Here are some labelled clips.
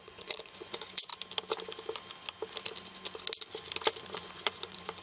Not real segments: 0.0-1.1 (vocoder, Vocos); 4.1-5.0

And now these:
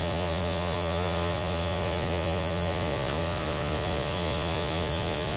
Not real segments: 0.0-5.4 (vocoder, Vocos)

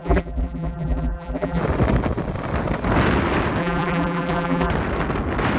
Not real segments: 0.0-1.6 (vocoder, BigVGAN v2); 3.6-4.7

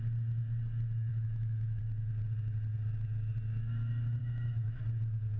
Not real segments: 1.1-1.8 (autoencoder, DAC-VAE); 4.2-4.8